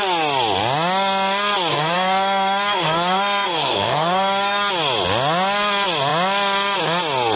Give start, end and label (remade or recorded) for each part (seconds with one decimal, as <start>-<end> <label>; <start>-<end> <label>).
0.0-1.7 recorded; 1.7-4.7 remade; 4.7-7.4 recorded